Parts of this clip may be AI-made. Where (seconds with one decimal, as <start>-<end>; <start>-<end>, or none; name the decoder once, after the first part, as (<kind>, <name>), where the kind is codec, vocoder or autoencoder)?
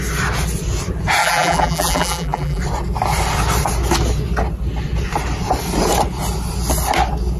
1.2-2.6 (vocoder, BigVGAN v2)